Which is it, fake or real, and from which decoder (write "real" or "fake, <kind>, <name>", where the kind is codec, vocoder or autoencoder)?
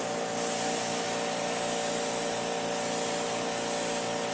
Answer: real